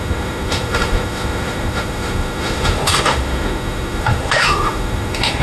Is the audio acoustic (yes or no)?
no